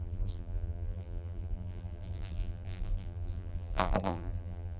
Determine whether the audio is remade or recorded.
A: remade